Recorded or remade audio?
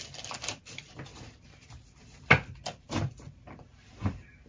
remade